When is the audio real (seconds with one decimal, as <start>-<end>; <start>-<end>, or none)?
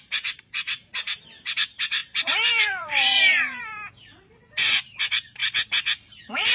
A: 5.4-6.1